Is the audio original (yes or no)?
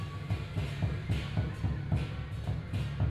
yes